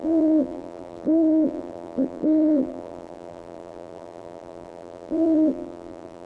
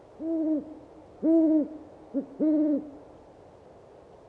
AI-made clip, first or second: first